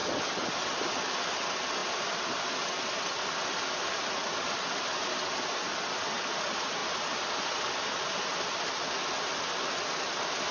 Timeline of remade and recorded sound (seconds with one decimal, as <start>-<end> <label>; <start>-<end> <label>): 0.0-10.5 recorded